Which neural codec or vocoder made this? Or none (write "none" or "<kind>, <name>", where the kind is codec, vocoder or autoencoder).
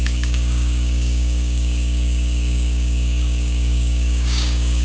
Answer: codec, DAC